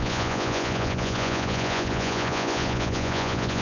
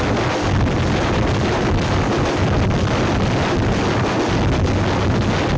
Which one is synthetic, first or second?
first